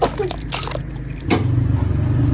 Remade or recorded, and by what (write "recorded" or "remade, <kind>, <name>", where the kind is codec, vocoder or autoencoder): recorded